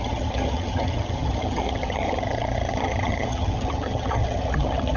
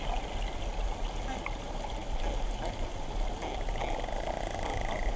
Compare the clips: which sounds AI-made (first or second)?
first